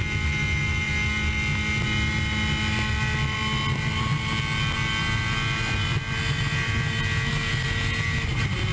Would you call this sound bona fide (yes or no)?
yes